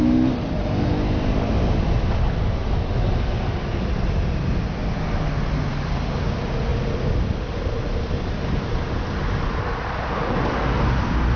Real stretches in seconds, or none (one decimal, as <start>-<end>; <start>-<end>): 0.0-11.4